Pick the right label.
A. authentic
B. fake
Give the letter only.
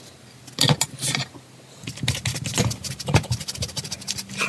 A